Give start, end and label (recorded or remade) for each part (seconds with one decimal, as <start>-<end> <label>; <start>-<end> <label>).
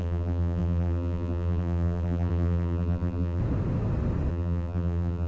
0.0-3.4 remade; 3.4-4.3 recorded; 4.3-5.3 remade